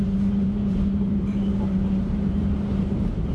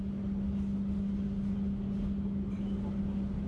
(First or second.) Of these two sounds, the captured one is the second